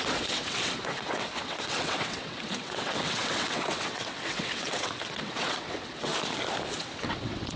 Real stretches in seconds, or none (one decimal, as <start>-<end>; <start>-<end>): 6.1-6.7